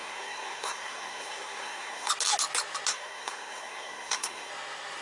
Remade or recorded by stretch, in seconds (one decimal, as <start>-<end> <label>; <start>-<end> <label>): 0.0-2.1 remade; 2.1-2.9 recorded; 2.9-4.5 remade; 4.5-5.0 recorded